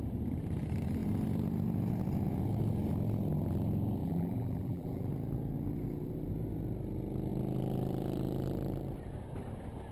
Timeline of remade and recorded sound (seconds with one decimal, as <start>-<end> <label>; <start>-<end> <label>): 0.0-4.0 recorded; 4.0-5.1 remade; 5.1-9.9 recorded